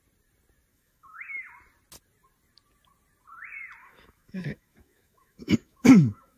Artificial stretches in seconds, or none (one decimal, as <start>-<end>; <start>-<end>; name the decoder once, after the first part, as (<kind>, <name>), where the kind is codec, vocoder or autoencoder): 0.7-1.5 (autoencoder, DAC-VAE); 3.8-6.4